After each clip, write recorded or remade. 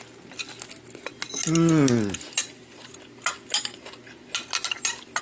recorded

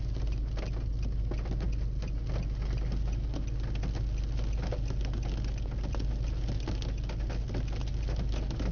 recorded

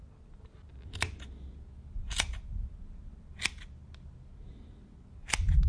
recorded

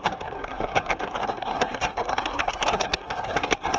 remade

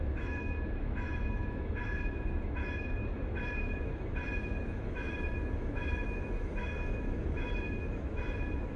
remade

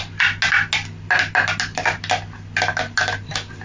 recorded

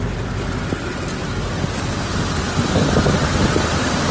recorded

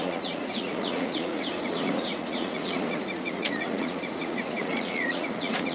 remade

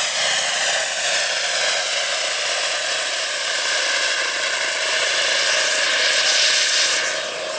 recorded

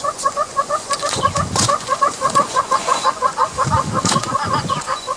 remade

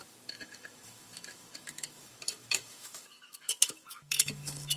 remade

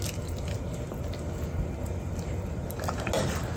recorded